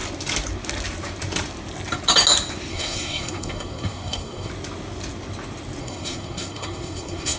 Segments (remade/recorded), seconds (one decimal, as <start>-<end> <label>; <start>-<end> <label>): 0.0-2.7 recorded; 2.7-4.5 remade; 4.5-5.8 recorded; 5.8-7.4 remade